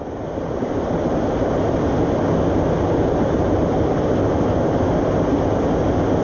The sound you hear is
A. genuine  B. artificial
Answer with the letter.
A